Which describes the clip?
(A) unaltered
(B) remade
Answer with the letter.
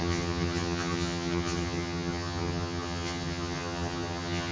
B